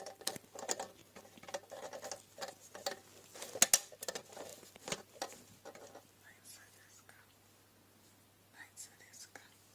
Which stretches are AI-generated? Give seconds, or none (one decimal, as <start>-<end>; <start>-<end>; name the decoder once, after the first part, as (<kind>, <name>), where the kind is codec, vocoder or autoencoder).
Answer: none